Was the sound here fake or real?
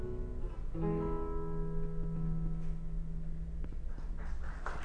real